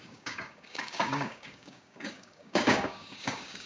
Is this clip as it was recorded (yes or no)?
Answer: no